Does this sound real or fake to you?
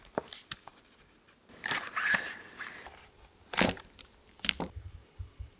fake